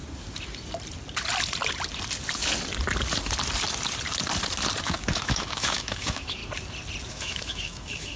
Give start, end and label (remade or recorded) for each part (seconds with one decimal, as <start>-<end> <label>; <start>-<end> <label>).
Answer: 0.0-4.8 recorded; 4.8-6.4 remade; 6.4-7.1 recorded; 7.1-8.2 remade